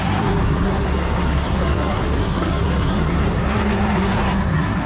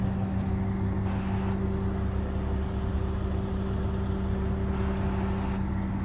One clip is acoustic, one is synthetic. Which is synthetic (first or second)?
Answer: first